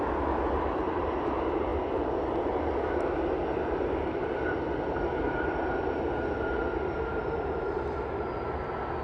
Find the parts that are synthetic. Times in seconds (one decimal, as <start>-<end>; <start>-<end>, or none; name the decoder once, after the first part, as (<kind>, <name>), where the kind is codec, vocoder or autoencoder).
none